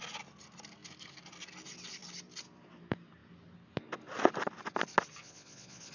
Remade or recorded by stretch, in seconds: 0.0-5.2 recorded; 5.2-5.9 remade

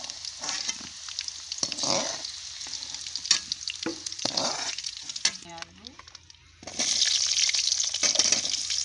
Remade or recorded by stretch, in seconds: 0.0-3.9 recorded; 3.9-5.5 remade; 5.5-8.8 recorded

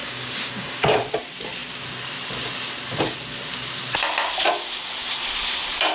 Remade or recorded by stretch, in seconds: 0.0-0.9 remade; 0.9-5.9 recorded

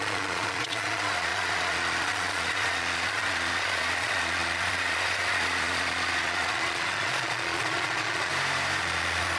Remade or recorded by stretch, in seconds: 0.0-8.3 remade; 8.3-8.8 recorded; 8.8-9.4 remade